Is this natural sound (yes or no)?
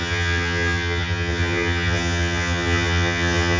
no